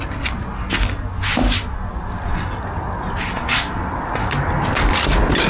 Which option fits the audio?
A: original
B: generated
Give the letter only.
A